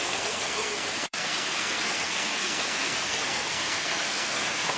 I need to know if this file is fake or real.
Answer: fake